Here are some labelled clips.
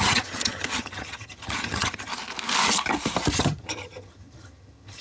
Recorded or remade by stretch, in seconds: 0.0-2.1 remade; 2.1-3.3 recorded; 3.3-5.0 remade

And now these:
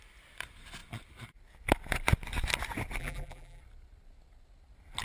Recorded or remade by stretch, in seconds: 0.0-3.0 recorded; 3.0-3.6 remade; 3.6-5.0 recorded

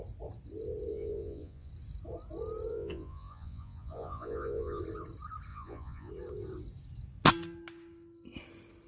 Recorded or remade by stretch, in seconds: 0.0-0.9 recorded; 0.9-1.7 remade; 1.7-2.7 recorded; 2.7-4.8 remade; 4.8-5.5 recorded; 5.5-6.1 remade; 6.1-8.9 recorded

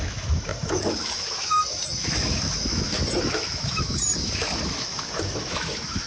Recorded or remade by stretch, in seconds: 0.0-6.1 remade

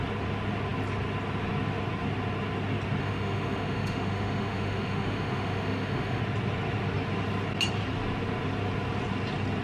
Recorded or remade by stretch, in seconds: 0.0-3.0 recorded; 3.0-6.2 remade; 6.2-9.6 recorded

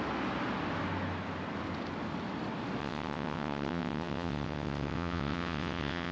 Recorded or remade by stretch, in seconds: 0.0-2.8 recorded; 2.8-6.1 remade

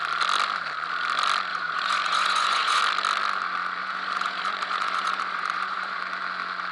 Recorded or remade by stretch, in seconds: 0.0-1.5 recorded; 1.5-2.8 remade; 2.8-3.8 recorded; 3.8-6.0 remade; 6.0-6.7 recorded

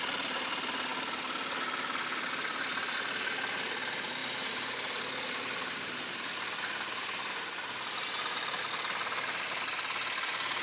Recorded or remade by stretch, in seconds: 0.0-10.6 recorded